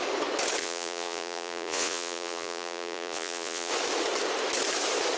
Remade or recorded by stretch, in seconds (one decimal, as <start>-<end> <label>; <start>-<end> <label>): 0.0-0.6 recorded; 0.6-3.7 remade; 3.7-5.2 recorded